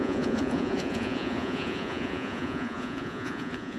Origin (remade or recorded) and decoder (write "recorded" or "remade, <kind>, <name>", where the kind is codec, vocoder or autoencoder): remade, vocoder, Vocos